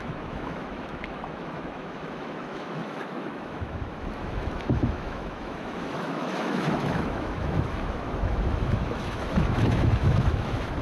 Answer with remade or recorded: remade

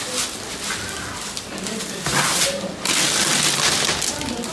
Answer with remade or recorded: recorded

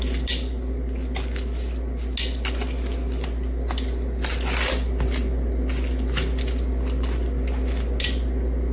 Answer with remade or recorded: recorded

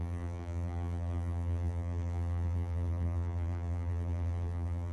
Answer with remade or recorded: remade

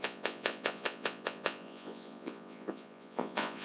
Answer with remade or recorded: remade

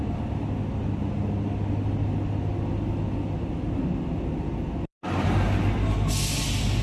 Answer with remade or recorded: recorded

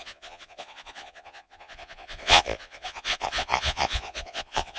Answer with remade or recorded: remade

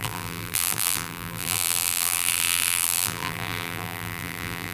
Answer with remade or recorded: remade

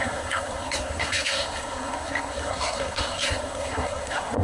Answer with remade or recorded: remade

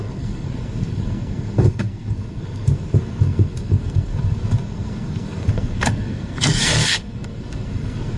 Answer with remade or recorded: remade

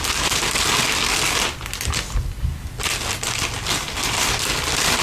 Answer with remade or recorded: recorded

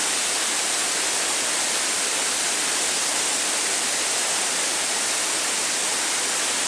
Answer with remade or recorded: recorded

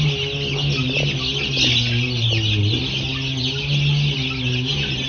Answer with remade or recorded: recorded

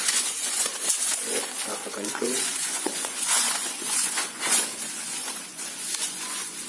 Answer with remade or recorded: remade